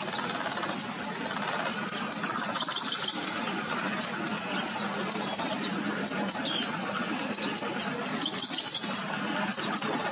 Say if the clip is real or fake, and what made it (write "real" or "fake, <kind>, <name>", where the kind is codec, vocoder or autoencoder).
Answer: real